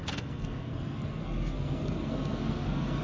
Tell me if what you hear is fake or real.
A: fake